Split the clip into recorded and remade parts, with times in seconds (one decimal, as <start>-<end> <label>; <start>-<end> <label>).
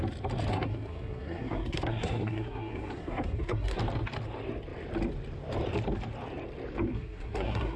0.0-0.5 recorded; 0.5-3.8 remade; 3.8-6.9 recorded; 6.9-7.8 remade